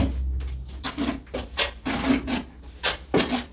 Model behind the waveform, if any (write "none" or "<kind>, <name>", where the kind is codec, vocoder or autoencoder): none